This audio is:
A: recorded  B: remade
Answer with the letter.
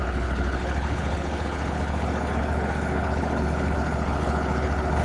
B